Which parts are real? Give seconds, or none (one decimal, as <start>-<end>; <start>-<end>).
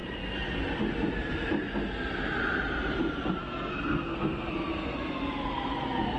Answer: 0.0-3.4; 4.5-6.2